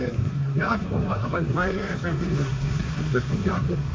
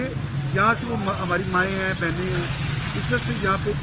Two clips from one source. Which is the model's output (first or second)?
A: first